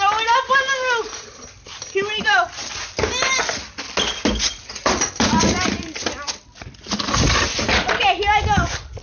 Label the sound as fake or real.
real